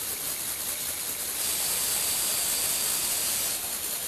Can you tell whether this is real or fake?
real